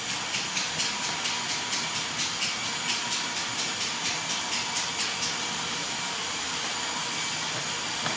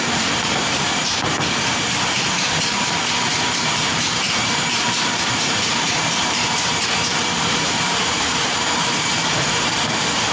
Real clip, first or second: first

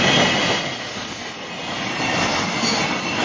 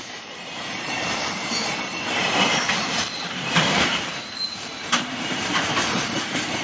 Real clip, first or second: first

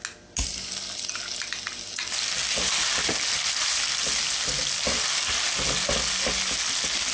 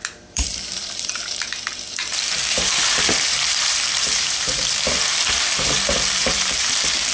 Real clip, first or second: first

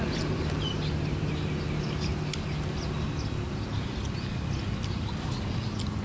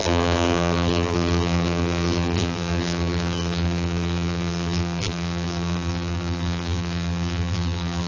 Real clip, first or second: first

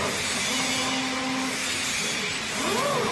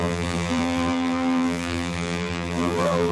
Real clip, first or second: first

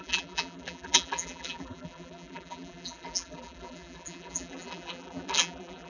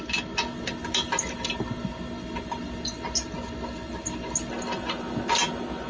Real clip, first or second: second